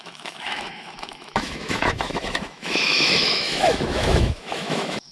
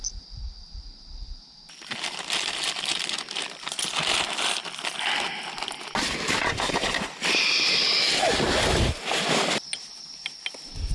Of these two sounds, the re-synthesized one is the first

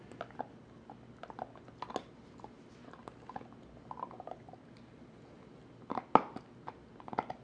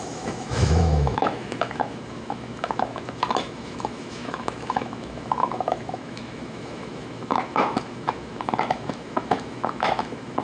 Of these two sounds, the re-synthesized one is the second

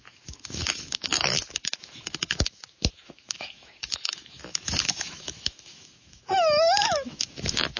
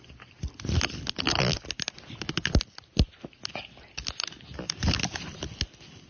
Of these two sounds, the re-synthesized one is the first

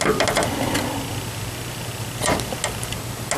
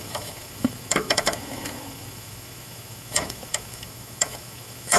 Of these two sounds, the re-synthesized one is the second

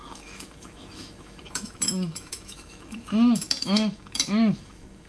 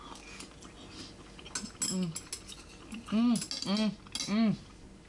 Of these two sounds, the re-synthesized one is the first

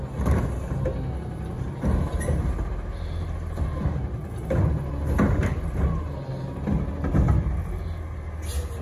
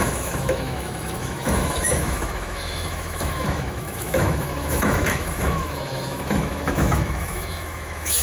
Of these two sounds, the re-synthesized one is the second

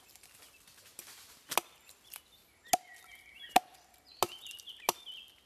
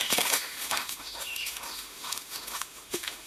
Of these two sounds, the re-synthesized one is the second